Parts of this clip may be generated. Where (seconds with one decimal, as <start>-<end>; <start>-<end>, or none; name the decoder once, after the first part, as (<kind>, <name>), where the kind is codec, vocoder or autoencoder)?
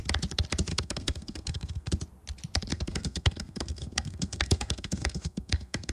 0.7-1.9 (codec, SNAC); 2.7-5.9